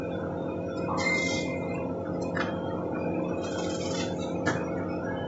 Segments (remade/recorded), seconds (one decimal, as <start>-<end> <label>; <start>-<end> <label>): 0.0-5.3 recorded